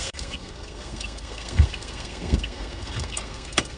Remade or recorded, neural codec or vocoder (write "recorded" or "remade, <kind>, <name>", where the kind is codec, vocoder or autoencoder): remade, codec, SNAC